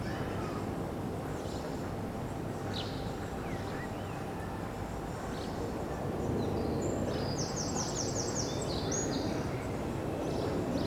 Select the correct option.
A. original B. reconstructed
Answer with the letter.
A